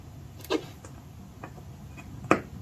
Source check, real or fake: real